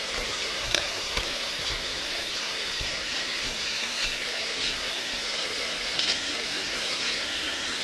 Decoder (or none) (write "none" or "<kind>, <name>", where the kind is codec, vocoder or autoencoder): codec, SNAC